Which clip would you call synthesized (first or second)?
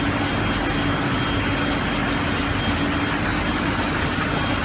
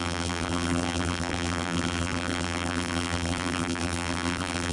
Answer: second